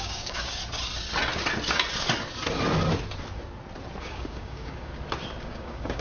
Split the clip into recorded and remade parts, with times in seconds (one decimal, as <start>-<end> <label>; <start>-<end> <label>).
0.0-0.6 remade; 0.6-4.0 recorded; 4.0-4.9 remade; 4.9-5.4 recorded; 5.4-6.0 remade